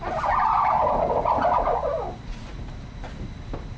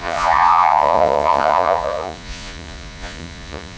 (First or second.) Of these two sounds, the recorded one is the first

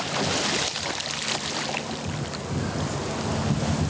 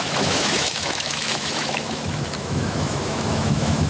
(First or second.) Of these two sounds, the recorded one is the first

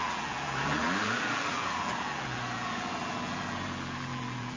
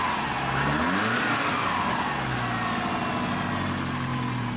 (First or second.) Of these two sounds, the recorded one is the second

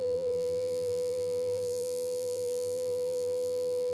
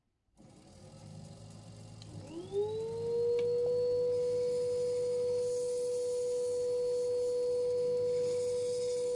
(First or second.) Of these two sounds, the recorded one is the second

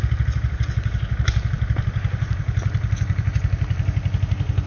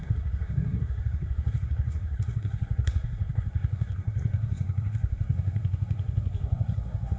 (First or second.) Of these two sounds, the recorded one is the first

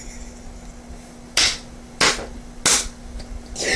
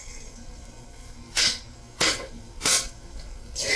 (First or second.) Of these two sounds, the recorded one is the first